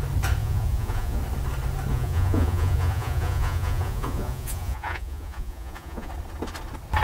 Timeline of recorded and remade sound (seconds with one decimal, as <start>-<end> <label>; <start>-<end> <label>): 0.0-0.4 recorded; 0.4-1.2 remade; 1.2-1.9 recorded; 1.9-6.1 remade; 6.1-7.0 recorded